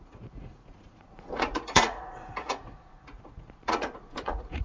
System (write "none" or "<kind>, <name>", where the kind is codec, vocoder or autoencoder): vocoder, Vocos